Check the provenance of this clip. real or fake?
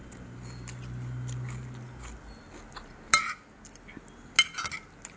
real